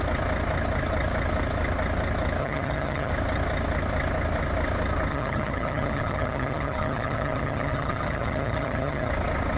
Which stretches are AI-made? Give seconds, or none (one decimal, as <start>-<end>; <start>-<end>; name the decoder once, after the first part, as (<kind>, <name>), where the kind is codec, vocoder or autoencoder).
2.4-3.1 (vocoder, HiFi-GAN); 5.1-9.1